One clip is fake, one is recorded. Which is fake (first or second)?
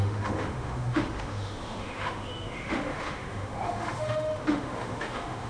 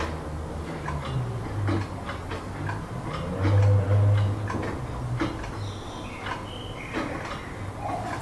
first